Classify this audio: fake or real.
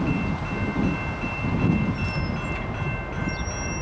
real